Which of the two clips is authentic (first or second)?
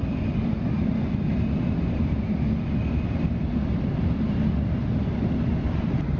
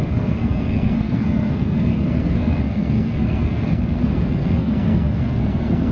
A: first